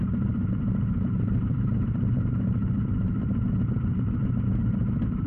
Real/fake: fake